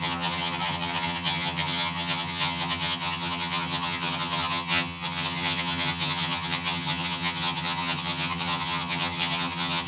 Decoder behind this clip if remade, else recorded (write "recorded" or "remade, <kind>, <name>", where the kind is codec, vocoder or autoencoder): remade, vocoder, HiFi-GAN